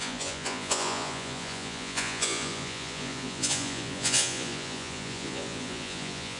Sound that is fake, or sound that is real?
fake